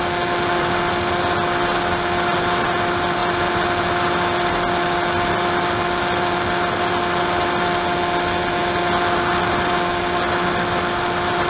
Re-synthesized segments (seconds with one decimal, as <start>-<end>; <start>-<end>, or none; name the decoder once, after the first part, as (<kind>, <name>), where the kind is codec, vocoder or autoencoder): none